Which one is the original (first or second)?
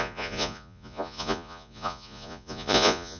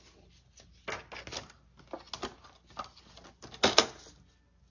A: second